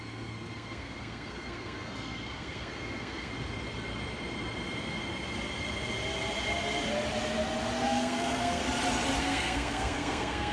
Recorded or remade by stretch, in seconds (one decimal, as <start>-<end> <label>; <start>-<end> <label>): 0.0-3.3 remade; 3.3-7.8 recorded; 7.8-8.6 remade; 8.6-9.2 recorded; 9.2-10.5 remade